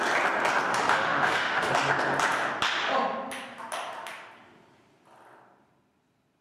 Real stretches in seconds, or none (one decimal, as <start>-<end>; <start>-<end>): 0.0-0.7; 1.7-6.4